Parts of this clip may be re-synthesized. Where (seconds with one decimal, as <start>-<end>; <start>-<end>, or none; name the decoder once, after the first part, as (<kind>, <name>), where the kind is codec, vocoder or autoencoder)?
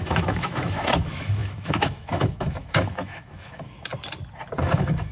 0.0-3.9 (autoencoder, DAC-VAE); 4.6-5.1